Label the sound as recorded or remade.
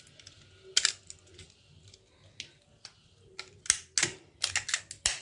recorded